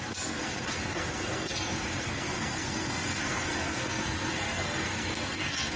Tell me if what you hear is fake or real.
fake